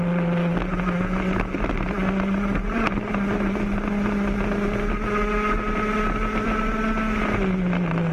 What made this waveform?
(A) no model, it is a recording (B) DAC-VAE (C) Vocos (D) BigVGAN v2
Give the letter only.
A